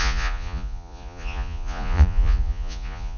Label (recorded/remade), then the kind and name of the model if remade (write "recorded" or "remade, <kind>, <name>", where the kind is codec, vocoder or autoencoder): remade, vocoder, Vocos